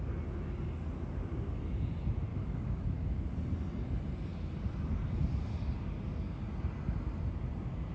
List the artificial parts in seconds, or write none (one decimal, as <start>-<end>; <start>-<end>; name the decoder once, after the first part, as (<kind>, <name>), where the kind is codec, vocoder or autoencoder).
2.3-3.2 (autoencoder, DAC-VAE)